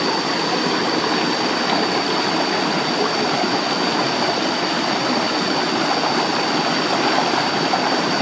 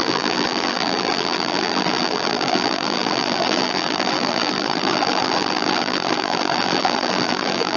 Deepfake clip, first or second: second